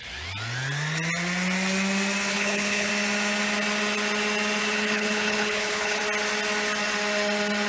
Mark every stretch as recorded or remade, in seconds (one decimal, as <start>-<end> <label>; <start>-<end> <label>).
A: 0.0-2.3 recorded; 2.3-2.9 remade; 2.9-4.6 recorded; 4.6-6.0 remade; 6.0-7.7 recorded

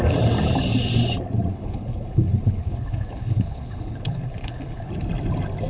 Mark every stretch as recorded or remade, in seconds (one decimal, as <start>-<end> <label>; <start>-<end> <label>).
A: 0.0-1.5 recorded; 1.5-4.9 remade; 4.9-5.7 recorded

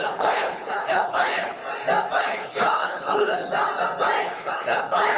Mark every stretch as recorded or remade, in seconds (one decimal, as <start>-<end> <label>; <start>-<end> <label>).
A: 0.0-1.6 remade; 1.6-2.2 recorded; 2.2-3.4 remade; 3.4-4.2 recorded; 4.2-5.2 remade